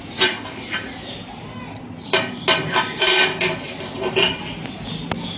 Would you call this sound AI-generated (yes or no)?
no